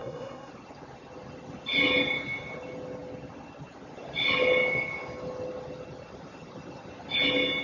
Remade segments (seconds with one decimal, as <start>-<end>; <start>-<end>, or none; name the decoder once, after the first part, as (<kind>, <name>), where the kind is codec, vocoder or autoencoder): 0.0-0.5 (codec, SNAC)

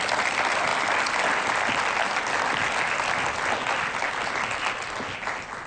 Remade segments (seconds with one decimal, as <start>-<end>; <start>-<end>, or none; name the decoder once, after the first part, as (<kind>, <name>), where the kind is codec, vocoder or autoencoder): none

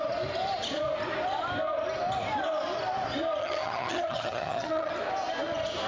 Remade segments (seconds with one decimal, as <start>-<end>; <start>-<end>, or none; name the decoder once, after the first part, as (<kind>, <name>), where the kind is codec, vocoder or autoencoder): 3.4-4.9 (vocoder, HiFi-GAN)

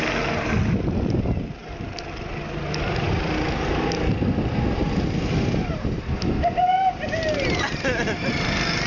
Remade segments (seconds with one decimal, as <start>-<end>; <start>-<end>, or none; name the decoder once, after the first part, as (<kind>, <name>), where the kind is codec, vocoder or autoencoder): 1.6-2.3 (vocoder, BigVGAN v2)